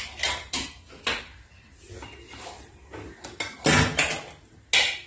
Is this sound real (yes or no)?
yes